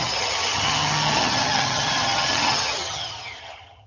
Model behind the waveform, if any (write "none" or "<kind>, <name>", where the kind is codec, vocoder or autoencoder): vocoder, HiFi-GAN